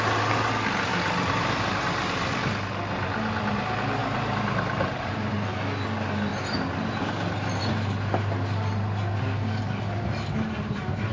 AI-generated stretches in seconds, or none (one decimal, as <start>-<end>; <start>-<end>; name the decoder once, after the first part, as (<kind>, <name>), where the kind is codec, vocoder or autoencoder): 0.9-2.4 (vocoder, BigVGAN v2); 4.0-5.5